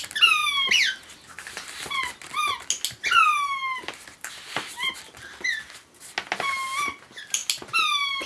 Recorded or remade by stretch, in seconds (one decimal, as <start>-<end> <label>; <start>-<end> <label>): 0.0-8.3 recorded

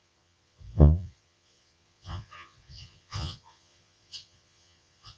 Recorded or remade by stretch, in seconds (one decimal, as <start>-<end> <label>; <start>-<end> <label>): 0.0-5.2 remade